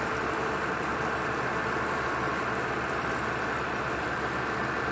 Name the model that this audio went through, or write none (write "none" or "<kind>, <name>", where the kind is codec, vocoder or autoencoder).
vocoder, BigVGAN v2